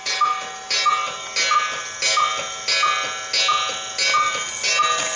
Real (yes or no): yes